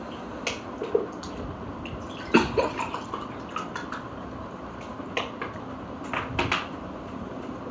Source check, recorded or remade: recorded